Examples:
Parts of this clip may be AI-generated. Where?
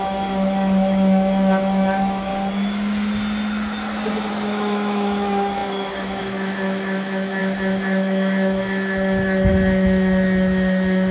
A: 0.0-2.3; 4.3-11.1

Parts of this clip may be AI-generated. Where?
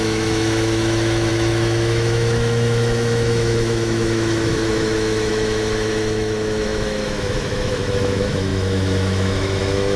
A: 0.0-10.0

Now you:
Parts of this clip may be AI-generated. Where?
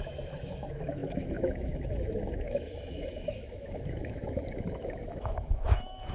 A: 0.0-6.1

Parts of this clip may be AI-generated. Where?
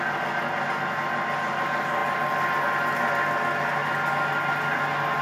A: none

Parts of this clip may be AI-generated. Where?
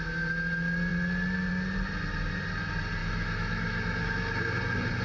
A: 3.0-4.5